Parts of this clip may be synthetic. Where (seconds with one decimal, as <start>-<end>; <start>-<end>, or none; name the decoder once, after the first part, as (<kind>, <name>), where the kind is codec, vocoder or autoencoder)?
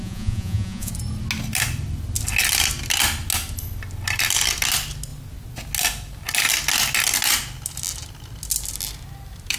0.0-0.9 (vocoder, Vocos)